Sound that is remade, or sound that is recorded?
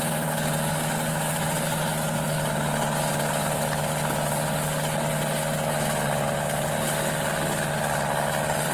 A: recorded